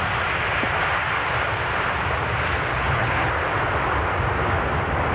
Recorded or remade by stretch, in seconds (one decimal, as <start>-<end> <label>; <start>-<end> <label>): 0.0-2.7 recorded; 2.7-3.3 remade; 3.3-5.1 recorded

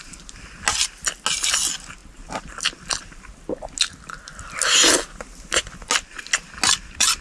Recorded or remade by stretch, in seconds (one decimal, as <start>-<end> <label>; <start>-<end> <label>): 0.0-7.2 recorded

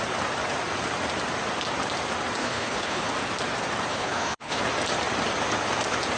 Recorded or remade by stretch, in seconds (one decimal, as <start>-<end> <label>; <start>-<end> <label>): 0.0-2.4 recorded; 2.4-3.1 remade; 3.1-3.9 recorded; 3.9-4.6 remade; 4.6-6.2 recorded

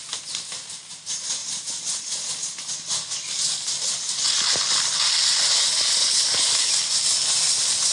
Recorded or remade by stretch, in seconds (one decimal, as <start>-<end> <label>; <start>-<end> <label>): 0.0-6.0 recorded; 6.0-6.7 remade; 6.7-7.9 recorded

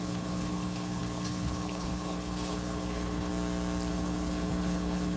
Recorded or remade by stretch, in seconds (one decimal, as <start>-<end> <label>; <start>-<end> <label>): 0.0-3.3 remade; 3.3-3.9 recorded; 3.9-5.2 remade